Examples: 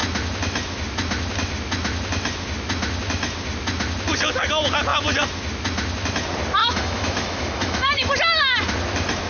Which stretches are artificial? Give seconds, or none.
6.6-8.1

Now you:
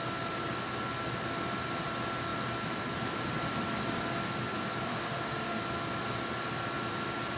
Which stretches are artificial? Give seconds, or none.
4.9-5.6

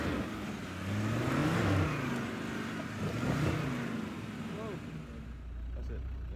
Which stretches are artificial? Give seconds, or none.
none

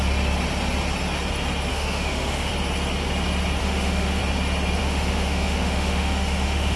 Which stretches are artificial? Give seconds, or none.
1.7-2.5; 3.6-4.2; 4.8-6.8

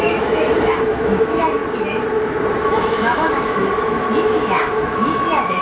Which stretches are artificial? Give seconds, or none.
0.0-1.6; 2.5-5.6